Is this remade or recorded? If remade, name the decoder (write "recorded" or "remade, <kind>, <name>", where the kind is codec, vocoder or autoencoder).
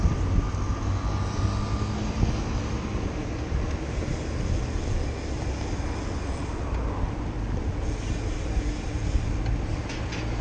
recorded